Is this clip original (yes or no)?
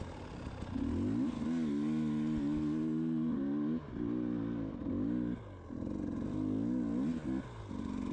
yes